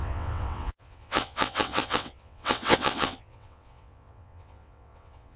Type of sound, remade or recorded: remade